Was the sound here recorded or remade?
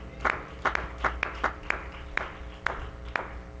recorded